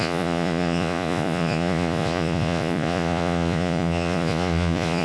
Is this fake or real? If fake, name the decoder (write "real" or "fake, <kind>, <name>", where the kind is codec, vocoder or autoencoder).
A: fake, vocoder, Vocos